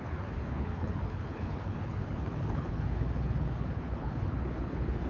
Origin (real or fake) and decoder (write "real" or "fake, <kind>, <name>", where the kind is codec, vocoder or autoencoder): fake, codec, HILCodec